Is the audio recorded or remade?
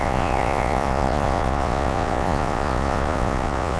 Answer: remade